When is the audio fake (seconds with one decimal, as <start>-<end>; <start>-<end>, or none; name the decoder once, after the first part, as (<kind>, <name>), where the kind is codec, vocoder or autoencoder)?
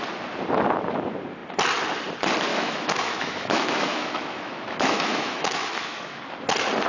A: 2.5-6.2 (autoencoder, DAC-VAE)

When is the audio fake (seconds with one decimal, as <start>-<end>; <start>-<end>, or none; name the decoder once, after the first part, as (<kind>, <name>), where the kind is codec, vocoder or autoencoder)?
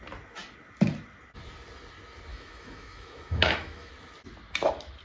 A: 2.3-3.9 (autoencoder, DAC-VAE)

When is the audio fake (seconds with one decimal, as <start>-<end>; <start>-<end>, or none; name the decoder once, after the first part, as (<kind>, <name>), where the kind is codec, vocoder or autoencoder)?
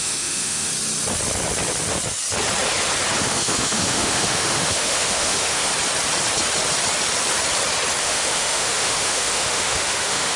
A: 0.0-0.7 (autoencoder, DAC-VAE); 3.2-5.7; 8.0-10.4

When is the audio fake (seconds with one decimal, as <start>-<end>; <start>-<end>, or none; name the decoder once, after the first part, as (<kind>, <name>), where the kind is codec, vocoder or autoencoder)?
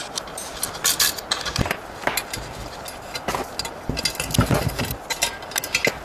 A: none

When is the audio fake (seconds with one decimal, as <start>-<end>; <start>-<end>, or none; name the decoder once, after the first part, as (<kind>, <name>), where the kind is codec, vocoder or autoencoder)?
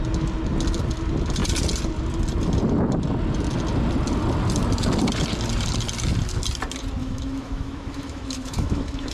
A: 7.0-9.1 (autoencoder, DAC-VAE)